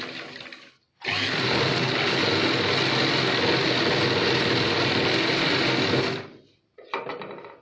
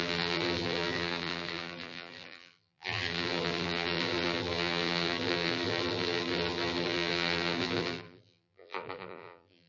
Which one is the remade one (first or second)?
second